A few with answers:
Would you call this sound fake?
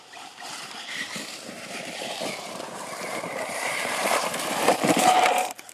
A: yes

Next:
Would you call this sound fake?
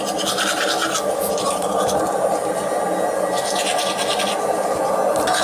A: no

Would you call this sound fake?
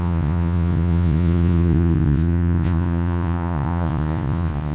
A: yes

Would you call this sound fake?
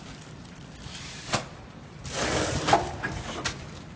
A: no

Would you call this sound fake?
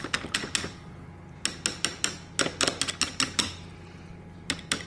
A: no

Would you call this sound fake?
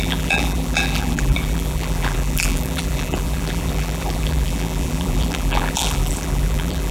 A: yes